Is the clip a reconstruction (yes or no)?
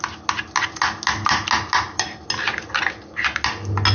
no